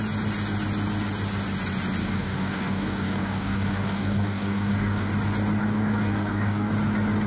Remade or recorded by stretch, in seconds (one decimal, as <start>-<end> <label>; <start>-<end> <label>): 0.0-2.0 recorded; 2.0-5.1 remade; 5.1-5.6 recorded; 5.6-6.7 remade; 6.7-7.3 recorded